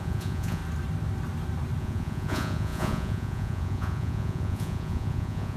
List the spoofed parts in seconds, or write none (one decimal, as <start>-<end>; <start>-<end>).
0.0-0.6; 1.8-5.6